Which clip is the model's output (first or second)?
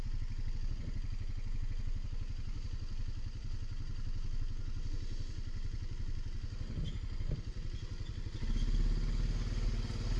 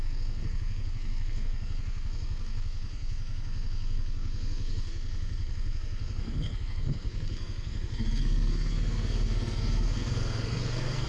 second